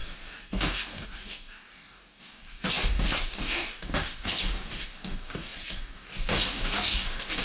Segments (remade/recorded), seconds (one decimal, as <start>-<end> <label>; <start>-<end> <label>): 0.0-7.4 remade